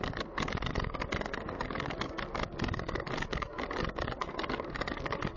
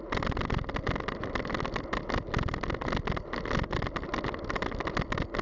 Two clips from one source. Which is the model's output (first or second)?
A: first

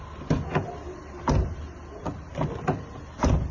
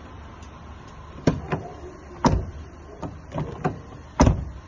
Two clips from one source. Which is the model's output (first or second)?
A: second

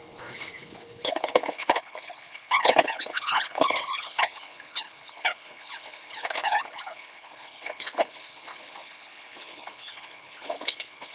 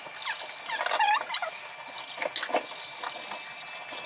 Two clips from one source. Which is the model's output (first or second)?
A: first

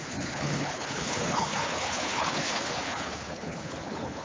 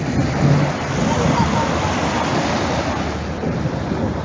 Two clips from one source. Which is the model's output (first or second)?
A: first